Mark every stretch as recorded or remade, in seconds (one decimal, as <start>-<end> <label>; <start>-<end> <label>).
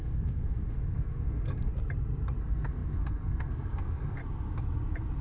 0.0-1.7 remade; 1.7-2.4 recorded; 2.4-4.2 remade; 4.2-5.2 recorded